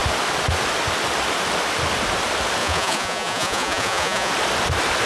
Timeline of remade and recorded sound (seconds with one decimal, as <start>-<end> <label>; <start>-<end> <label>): 0.0-2.6 recorded; 2.6-4.3 remade; 4.3-5.1 recorded